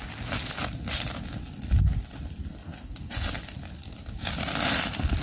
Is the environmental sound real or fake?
real